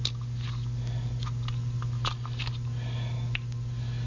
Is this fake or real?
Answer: real